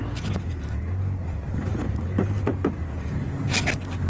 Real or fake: real